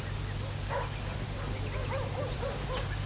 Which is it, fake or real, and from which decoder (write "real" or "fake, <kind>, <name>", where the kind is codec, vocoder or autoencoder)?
real